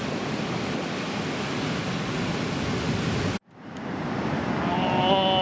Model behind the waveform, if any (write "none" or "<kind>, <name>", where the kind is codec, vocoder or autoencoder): none